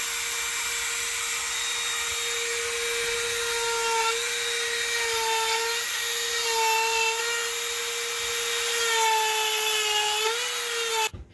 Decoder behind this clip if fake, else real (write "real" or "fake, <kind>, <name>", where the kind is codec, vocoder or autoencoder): real